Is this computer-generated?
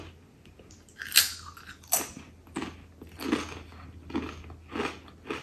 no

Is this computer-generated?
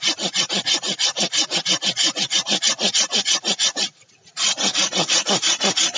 no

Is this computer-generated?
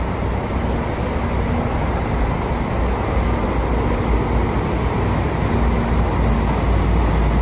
no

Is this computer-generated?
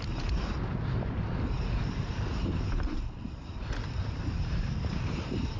yes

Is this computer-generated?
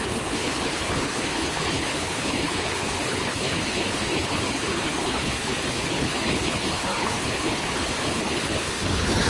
yes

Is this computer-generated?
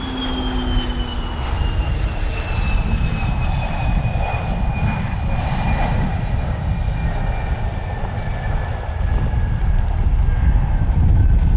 no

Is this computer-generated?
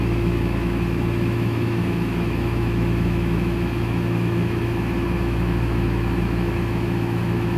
yes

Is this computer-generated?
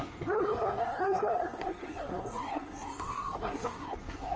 yes